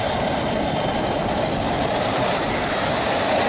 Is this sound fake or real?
fake